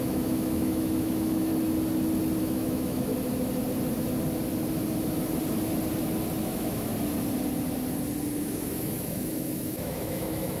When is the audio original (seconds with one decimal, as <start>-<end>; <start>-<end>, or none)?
1.5-2.4; 3.1-6.4; 6.9-8.4